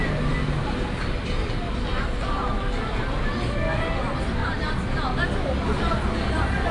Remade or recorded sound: recorded